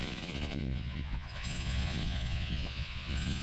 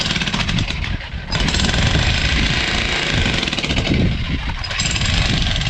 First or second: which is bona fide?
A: second